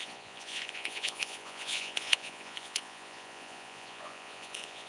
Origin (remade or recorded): remade